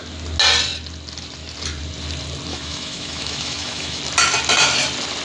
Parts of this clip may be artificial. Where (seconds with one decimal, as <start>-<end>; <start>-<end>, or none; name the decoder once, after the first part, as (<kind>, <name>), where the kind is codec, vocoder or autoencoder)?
2.5-4.0 (autoencoder, DAC-VAE)

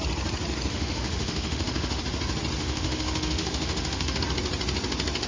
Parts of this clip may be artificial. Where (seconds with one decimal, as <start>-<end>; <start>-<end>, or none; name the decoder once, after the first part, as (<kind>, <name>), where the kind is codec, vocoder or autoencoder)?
0.7-2.0 (autoencoder, DAC-VAE); 2.6-4.2

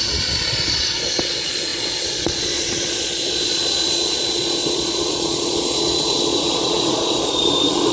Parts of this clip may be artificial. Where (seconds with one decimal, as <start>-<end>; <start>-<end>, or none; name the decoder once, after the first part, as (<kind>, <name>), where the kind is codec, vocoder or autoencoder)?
0.0-7.9 (vocoder, Vocos)

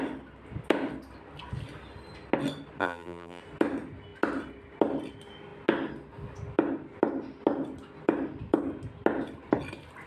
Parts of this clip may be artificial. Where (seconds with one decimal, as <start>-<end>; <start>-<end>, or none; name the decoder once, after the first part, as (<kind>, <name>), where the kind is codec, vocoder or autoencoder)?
2.8-3.4 (vocoder, BigVGAN v2)

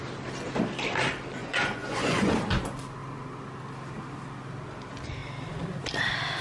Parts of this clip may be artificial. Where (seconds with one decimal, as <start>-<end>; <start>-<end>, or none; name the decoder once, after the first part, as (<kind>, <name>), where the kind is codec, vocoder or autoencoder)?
1.4-2.3 (vocoder, Vocos)

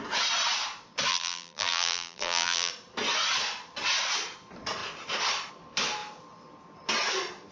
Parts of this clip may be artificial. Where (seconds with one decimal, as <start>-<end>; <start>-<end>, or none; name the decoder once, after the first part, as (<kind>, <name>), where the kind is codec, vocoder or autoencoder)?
1.1-2.7 (vocoder, BigVGAN v2)

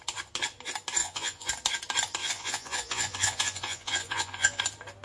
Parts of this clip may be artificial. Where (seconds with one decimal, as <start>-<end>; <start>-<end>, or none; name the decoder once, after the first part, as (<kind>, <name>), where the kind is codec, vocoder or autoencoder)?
1.0-1.5 (vocoder, Vocos); 2.2-4.6